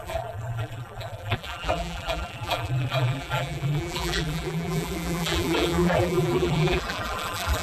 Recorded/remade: remade